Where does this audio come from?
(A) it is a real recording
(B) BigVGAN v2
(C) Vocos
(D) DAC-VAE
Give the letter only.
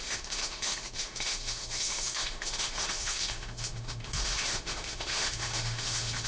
D